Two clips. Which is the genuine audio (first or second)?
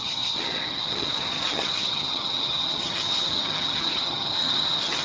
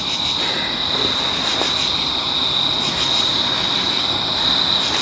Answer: second